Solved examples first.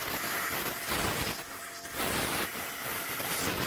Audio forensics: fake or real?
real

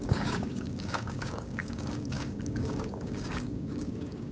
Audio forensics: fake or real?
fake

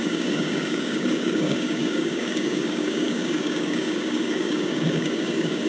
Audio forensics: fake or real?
fake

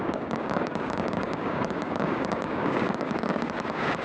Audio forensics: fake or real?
fake